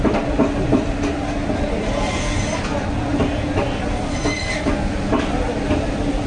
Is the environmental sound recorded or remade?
remade